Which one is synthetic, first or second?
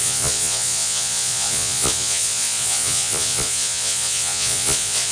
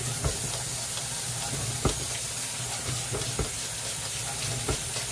first